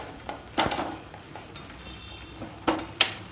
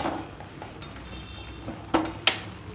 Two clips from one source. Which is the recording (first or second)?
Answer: second